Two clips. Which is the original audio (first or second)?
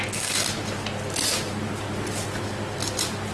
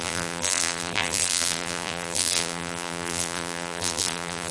first